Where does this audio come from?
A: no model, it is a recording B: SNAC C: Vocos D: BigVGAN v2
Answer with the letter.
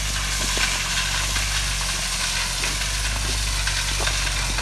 A